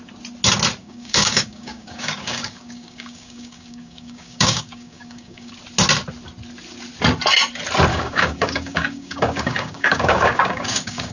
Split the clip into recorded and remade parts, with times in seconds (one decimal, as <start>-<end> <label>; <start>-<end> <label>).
0.0-0.8 recorded; 0.8-5.5 remade; 5.5-7.9 recorded; 7.9-11.1 remade